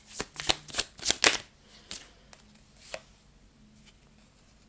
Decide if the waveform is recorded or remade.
recorded